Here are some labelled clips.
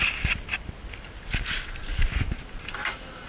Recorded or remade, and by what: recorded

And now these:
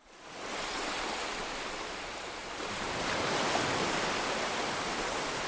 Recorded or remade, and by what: recorded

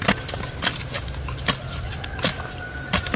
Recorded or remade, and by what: recorded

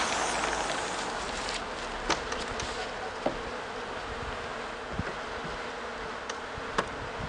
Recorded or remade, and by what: recorded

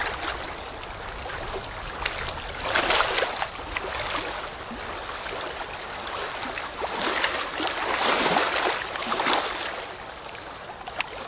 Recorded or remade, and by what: recorded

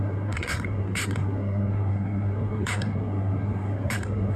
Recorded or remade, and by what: remade, codec, SNAC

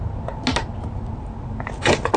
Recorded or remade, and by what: recorded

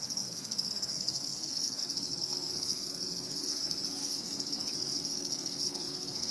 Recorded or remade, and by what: remade, codec, SNAC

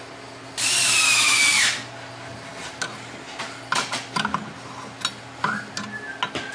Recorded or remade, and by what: recorded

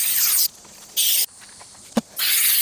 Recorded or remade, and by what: recorded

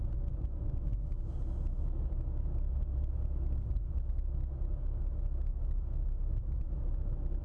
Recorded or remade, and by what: recorded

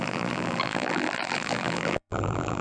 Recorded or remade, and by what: remade, vocoder, BigVGAN v2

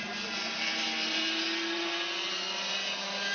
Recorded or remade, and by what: recorded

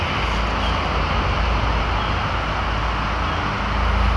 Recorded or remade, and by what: recorded